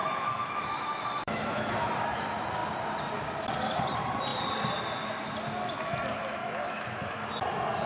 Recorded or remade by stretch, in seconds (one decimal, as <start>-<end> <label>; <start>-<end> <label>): 0.0-2.2 remade; 2.2-6.4 recorded; 6.4-7.3 remade; 7.3-7.9 recorded